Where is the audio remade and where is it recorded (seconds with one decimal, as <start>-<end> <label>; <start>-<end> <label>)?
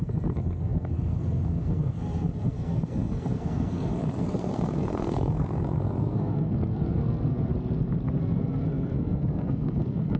0.0-7.5 remade; 7.5-8.2 recorded; 8.2-10.2 remade